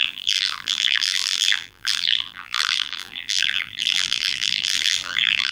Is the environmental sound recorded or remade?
remade